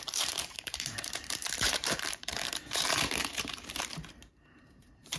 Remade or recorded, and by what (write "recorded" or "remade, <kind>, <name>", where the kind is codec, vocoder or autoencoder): remade, vocoder, BigVGAN v2